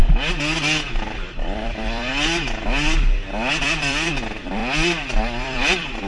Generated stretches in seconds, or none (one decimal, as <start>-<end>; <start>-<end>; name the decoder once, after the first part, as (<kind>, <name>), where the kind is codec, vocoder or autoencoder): 1.0-2.1 (vocoder, BigVGAN v2); 3.6-4.6; 5.2-6.1